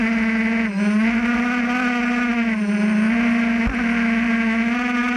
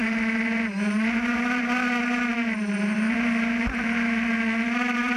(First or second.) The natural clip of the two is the first